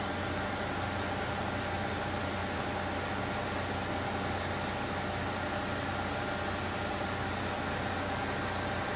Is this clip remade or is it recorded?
recorded